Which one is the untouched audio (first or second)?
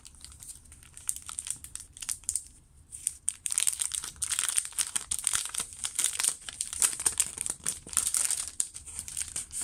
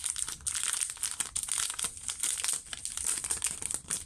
second